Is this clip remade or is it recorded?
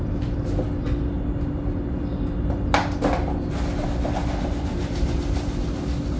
recorded